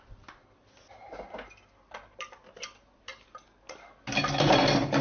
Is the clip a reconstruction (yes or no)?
no